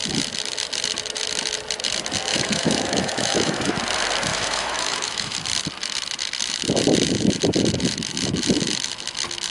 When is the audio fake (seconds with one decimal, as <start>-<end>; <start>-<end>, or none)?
2.3-3.7; 4.3-5.4